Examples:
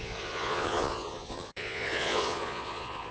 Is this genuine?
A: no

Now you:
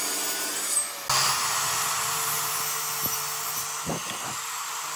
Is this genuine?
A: yes